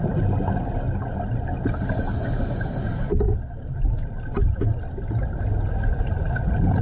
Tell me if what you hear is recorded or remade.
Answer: recorded